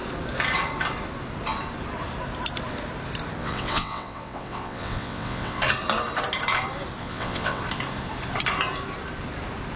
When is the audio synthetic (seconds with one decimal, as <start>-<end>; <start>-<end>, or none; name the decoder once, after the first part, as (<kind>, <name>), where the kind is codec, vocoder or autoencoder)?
3.4-5.6 (vocoder, WaveNeXt); 7.0-7.6